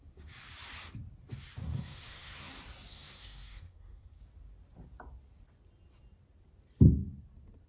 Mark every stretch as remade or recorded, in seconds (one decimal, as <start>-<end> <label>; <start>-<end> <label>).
0.0-1.6 recorded; 1.6-2.5 remade; 2.5-2.9 recorded; 2.9-4.2 remade; 4.2-7.7 recorded